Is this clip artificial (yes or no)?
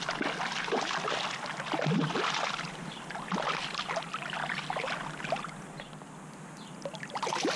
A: no